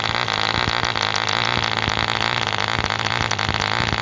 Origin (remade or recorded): recorded